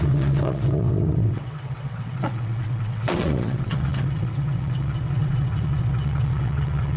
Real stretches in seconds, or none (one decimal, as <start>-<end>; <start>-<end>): none